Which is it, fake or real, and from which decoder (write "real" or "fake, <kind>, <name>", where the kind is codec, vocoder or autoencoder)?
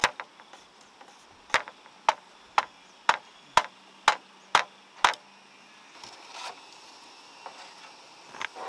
real